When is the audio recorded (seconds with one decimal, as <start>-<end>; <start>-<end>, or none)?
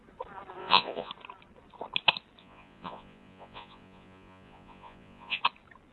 0.0-0.6; 1.1-2.4; 5.4-5.9